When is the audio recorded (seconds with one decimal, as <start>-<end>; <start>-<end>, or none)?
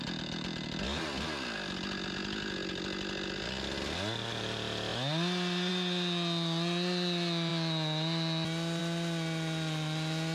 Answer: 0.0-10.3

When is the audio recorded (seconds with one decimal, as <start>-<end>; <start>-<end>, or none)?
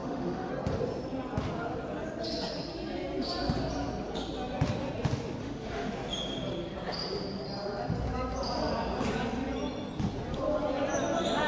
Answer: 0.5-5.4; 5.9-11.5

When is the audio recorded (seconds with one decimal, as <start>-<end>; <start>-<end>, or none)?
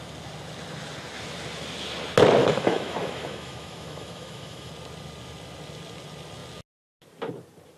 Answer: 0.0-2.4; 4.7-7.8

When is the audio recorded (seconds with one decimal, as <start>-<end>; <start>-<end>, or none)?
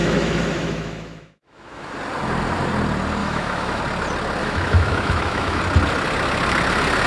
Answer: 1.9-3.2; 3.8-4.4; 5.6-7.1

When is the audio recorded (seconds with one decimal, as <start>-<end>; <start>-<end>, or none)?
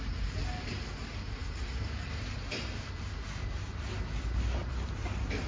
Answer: 0.0-5.5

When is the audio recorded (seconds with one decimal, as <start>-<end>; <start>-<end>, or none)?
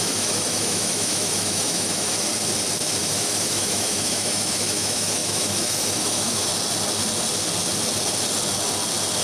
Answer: 2.3-3.0; 6.5-9.2